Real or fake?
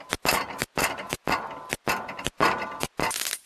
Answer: real